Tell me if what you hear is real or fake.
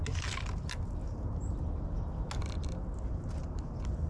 real